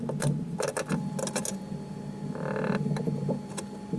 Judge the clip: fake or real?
real